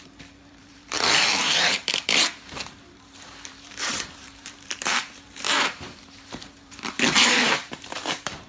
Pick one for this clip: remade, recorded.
remade